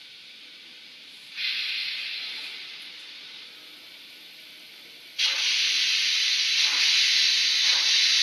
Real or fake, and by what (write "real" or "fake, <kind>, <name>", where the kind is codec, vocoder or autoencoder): real